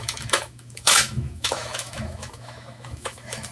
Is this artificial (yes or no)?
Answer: yes